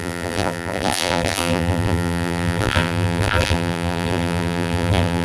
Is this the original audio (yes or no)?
no